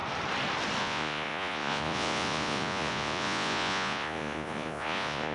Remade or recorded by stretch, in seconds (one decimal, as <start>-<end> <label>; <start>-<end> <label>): 0.0-0.8 recorded; 0.8-5.3 remade